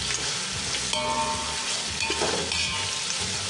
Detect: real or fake real